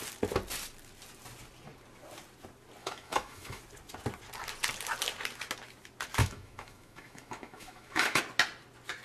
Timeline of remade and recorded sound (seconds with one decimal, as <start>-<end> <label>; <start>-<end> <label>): 0.0-2.8 recorded; 2.8-3.6 remade; 3.6-6.2 recorded; 6.2-8.2 remade; 8.2-9.0 recorded